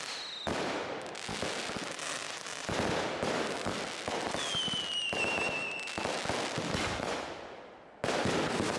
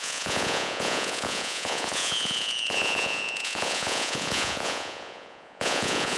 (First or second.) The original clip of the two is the first